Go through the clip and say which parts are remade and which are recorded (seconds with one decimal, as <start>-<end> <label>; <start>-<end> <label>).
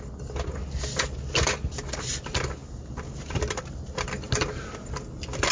0.0-5.5 recorded